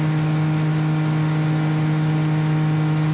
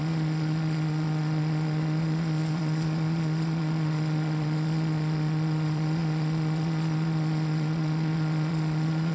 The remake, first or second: second